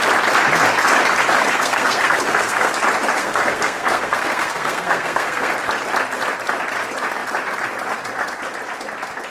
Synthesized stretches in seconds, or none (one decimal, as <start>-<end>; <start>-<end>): 1.4-2.7; 3.2-5.5